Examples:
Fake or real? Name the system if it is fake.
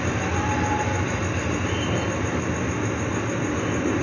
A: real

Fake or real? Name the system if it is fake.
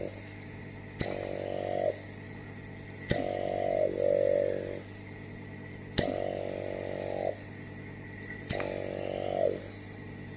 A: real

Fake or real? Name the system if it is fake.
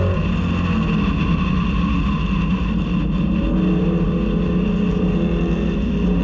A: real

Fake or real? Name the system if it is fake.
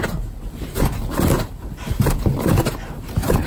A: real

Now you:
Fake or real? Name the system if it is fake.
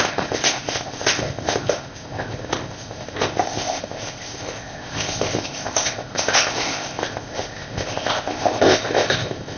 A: fake, codec, ZipCodec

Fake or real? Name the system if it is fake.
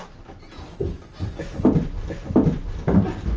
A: real